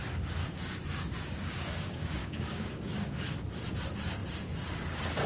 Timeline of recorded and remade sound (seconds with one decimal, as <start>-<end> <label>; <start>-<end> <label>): 0.0-0.4 recorded; 0.4-3.2 remade; 3.2-5.3 recorded